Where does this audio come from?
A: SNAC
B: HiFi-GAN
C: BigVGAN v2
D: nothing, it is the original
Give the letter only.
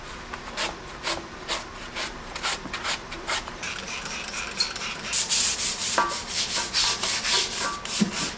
C